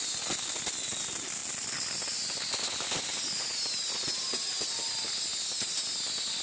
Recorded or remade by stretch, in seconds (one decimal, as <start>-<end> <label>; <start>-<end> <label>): 0.0-6.4 recorded